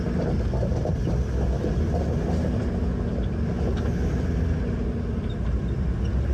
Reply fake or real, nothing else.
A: real